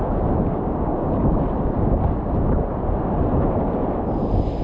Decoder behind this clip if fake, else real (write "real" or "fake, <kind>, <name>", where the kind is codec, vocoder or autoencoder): real